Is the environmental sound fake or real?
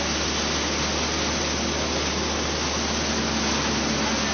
real